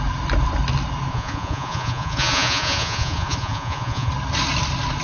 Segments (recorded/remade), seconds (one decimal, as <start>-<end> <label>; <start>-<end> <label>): 0.0-1.1 recorded; 1.1-4.1 remade; 4.1-5.0 recorded